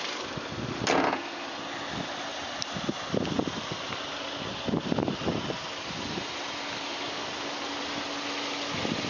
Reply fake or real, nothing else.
real